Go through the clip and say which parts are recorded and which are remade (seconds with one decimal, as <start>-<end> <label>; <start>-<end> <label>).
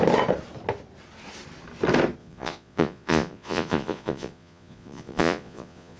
0.0-2.2 recorded; 2.2-6.0 remade